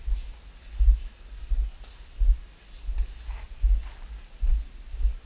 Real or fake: real